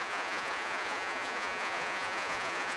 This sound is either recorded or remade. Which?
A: remade